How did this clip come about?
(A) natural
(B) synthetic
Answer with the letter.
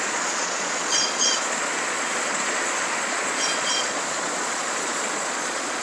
B